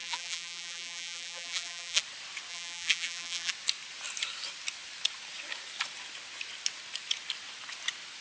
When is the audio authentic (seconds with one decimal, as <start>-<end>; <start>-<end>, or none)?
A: 2.0-2.5; 3.5-8.2